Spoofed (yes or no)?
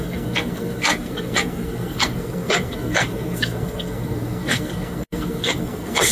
yes